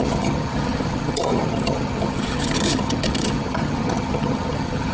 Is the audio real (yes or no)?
no